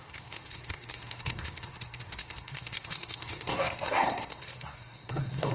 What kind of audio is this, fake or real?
fake